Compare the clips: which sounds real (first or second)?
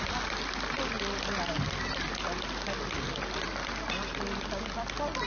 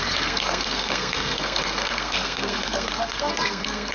first